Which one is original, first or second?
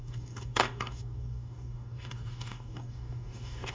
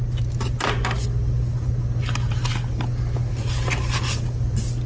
second